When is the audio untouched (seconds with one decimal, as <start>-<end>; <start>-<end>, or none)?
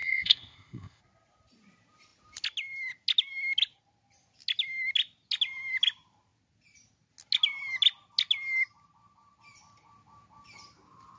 1.0-11.2